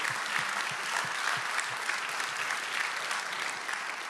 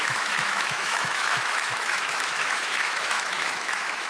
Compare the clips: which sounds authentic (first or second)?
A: first